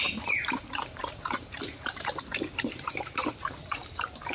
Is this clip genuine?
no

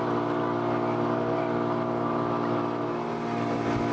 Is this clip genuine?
yes